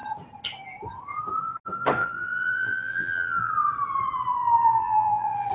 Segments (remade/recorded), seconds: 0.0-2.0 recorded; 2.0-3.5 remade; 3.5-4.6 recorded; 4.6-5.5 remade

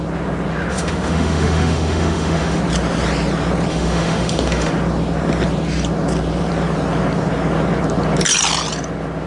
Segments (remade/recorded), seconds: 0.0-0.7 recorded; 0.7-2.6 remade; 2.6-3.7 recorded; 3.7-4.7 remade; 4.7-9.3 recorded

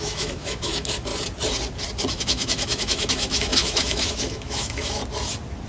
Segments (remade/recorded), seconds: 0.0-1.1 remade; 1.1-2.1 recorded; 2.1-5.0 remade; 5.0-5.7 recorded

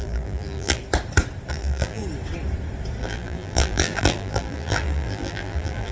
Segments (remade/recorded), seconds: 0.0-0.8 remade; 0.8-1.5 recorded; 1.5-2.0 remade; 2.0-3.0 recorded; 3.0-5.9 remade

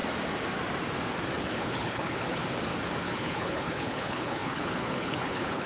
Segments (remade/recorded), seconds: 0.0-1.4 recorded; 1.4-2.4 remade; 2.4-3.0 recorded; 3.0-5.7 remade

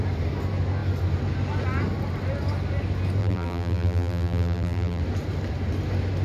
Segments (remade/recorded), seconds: 0.0-3.2 recorded; 3.2-5.0 remade; 5.0-6.2 recorded

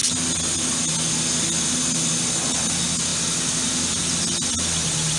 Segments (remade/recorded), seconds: 0.0-5.2 recorded

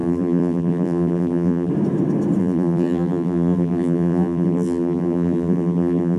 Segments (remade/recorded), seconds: 0.0-1.7 remade; 1.7-2.4 recorded; 2.4-6.2 remade